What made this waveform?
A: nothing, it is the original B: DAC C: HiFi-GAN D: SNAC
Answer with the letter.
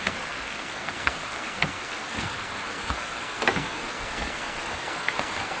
D